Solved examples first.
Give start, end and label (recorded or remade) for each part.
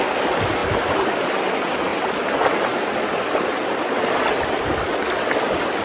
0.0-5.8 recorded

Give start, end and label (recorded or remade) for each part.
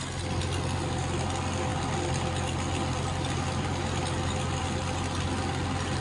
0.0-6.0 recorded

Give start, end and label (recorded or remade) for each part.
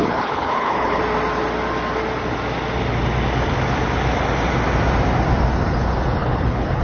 0.0-1.0 remade; 1.0-6.2 recorded; 6.2-6.8 remade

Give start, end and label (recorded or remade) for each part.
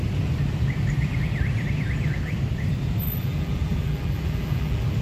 0.0-3.0 recorded; 3.0-5.0 remade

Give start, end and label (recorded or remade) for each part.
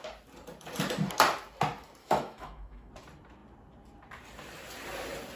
0.0-2.0 recorded; 2.0-2.9 remade; 2.9-5.4 recorded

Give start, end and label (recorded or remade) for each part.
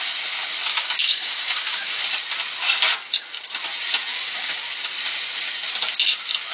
0.0-0.7 recorded; 0.7-2.0 remade; 2.0-4.1 recorded; 4.1-4.7 remade; 4.7-6.5 recorded